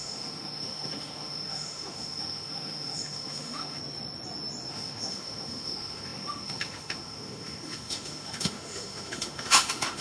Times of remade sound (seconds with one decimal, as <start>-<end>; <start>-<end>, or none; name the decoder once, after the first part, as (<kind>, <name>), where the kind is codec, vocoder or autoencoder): 0.0-3.8 (autoencoder, DAC-VAE); 4.7-10.0